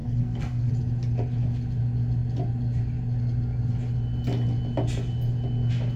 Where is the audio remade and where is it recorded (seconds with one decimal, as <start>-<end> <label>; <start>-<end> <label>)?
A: 0.0-0.7 remade; 0.7-6.0 recorded